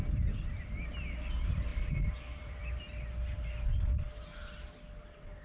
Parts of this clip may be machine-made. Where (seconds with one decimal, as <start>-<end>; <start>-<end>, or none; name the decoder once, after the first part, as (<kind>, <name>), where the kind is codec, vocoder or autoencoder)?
1.7-2.8 (vocoder, BigVGAN v2)